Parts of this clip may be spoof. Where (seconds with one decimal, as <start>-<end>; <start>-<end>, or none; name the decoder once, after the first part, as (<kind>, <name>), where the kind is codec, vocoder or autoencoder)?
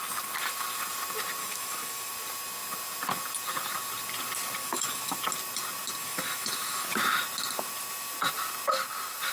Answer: 1.4-2.1 (autoencoder, DAC-VAE); 4.6-5.2; 6.0-6.9